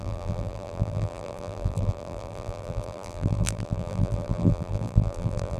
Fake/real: fake